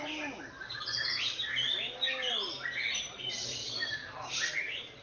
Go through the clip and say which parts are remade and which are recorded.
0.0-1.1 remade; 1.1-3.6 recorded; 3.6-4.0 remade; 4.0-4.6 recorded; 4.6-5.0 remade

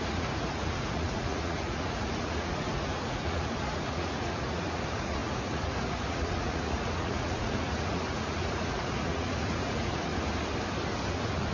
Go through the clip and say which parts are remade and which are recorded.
0.0-10.1 remade; 10.1-11.1 recorded; 11.1-11.5 remade